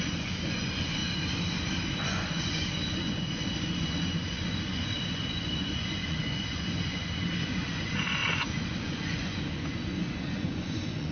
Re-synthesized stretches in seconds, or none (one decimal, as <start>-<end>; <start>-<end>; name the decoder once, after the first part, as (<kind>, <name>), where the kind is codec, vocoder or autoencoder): 0.0-1.0 (vocoder, Vocos); 2.0-11.1